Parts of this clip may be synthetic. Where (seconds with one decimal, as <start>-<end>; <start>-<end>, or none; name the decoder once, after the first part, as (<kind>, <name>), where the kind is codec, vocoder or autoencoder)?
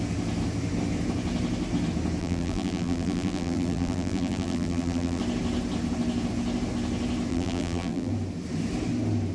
2.2-5.2 (vocoder, BigVGAN v2); 7.3-8.1